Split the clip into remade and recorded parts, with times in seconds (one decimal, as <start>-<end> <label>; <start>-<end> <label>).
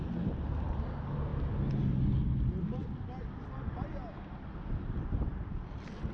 0.0-6.1 recorded